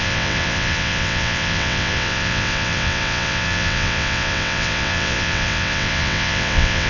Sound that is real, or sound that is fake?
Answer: fake